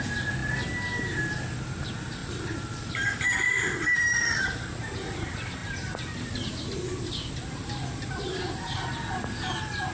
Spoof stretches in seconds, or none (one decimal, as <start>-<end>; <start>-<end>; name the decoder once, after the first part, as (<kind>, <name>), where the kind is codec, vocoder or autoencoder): 2.2-4.4 (vocoder, BigVGAN v2)